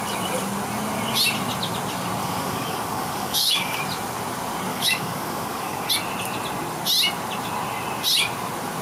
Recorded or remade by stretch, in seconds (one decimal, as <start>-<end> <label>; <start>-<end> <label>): 0.0-2.2 recorded; 2.2-3.8 remade; 3.8-4.7 recorded; 4.7-5.9 remade; 5.9-8.8 recorded